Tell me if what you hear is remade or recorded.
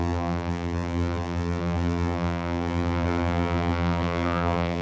remade